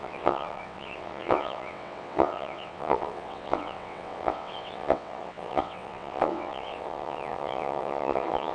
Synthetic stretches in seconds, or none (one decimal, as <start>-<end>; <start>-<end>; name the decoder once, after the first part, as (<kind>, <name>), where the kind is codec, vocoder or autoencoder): 0.0-8.5 (vocoder, WaveNeXt)